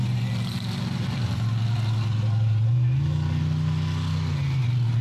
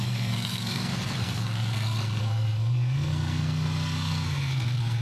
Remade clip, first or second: second